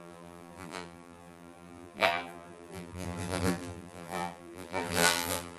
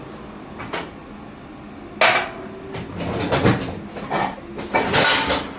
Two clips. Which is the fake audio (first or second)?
first